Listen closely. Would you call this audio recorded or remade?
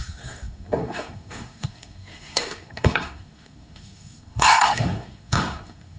remade